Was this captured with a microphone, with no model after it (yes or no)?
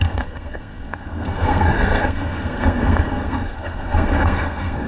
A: no